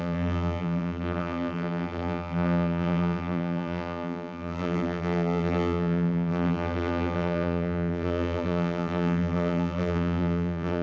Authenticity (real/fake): fake